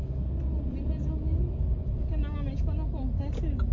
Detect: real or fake real